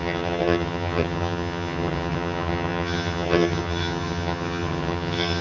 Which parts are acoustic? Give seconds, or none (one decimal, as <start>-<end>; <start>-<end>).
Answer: none